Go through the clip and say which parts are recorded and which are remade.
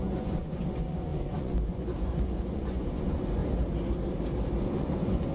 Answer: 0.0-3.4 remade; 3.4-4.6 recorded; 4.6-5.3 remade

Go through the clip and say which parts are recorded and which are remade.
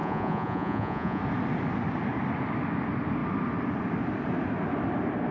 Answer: 0.0-1.2 remade; 1.2-5.3 recorded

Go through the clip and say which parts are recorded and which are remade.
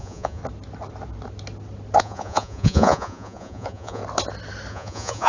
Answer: 0.0-0.4 remade; 0.4-2.0 recorded; 2.0-4.0 remade; 4.0-4.7 recorded; 4.7-5.3 remade